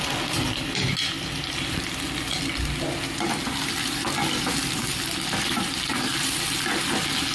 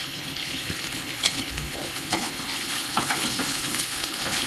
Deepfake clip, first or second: second